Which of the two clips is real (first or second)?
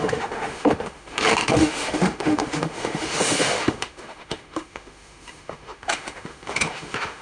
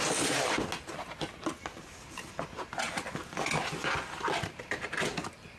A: second